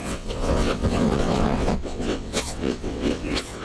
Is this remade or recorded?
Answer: remade